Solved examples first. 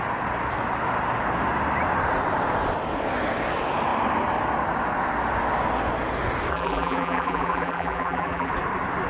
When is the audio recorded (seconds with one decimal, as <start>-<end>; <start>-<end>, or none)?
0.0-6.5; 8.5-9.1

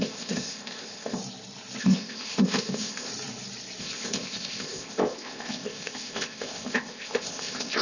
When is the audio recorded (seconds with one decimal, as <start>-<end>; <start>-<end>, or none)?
1.2-1.8; 3.1-3.8

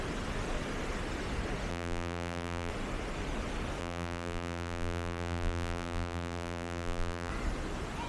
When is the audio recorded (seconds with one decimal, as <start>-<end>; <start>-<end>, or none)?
0.0-1.7; 2.7-3.8; 7.3-8.1

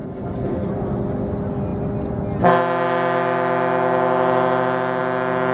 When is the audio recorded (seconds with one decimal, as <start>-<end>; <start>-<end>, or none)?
0.7-5.5